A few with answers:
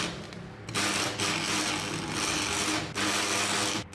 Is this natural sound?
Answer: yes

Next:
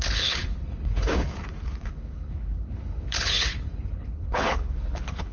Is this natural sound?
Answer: no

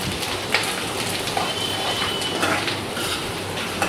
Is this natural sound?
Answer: no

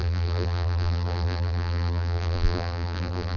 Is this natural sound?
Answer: no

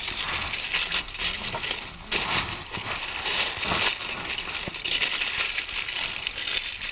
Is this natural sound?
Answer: yes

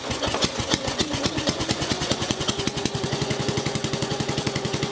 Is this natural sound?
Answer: no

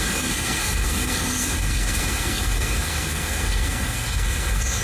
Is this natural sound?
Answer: no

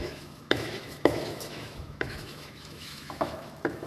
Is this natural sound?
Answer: no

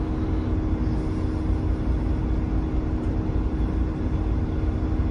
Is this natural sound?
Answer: yes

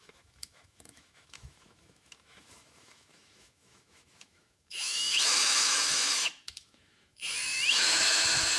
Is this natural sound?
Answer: no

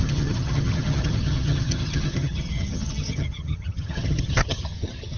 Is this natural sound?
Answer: no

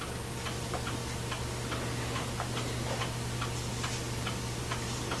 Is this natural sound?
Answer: yes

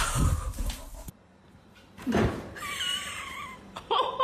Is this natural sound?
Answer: no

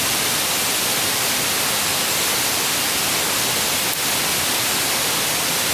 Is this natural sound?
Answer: yes